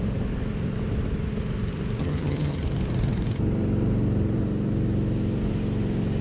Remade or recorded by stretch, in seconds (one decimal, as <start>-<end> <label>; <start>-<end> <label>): 0.0-2.0 recorded; 2.0-2.6 remade; 2.6-6.2 recorded